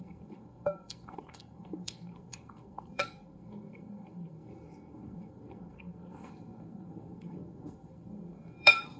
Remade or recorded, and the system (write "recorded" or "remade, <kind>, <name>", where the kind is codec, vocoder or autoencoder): remade, codec, SNAC